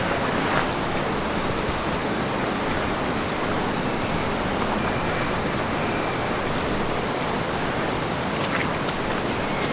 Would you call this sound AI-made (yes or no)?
no